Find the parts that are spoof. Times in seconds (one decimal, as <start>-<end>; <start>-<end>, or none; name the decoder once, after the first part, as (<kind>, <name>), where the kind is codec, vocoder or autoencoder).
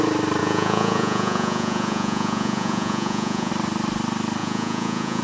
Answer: 0.4-3.5 (vocoder, Vocos); 4.4-5.2